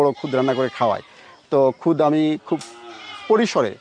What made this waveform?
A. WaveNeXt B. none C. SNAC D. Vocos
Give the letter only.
B